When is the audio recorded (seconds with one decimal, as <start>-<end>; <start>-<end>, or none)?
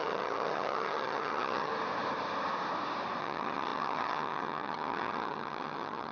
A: 1.7-3.2